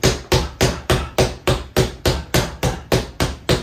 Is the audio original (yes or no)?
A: yes